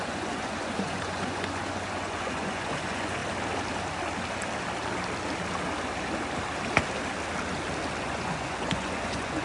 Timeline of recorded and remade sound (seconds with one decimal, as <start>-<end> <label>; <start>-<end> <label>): 0.0-3.2 remade; 3.2-8.0 recorded; 8.0-9.4 remade